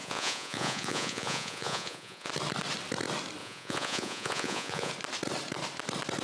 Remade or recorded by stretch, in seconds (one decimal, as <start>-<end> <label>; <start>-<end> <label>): 0.0-2.3 remade; 2.3-3.4 recorded; 3.4-4.9 remade; 4.9-6.2 recorded